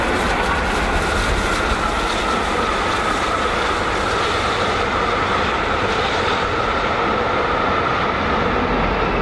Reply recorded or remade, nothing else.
recorded